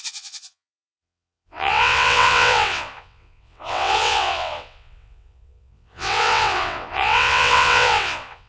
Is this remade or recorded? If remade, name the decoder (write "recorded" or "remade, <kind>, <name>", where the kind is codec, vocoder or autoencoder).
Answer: remade, vocoder, WaveNeXt